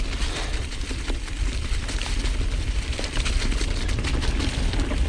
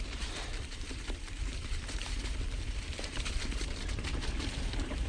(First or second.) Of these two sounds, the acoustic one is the first